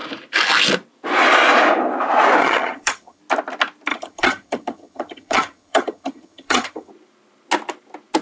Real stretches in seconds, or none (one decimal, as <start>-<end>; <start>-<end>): 0.0-2.4; 3.2-3.9; 6.9-8.2